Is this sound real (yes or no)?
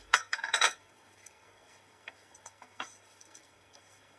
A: no